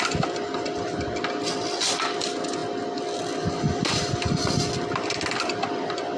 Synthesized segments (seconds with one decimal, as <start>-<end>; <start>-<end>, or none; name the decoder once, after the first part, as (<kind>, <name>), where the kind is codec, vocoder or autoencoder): none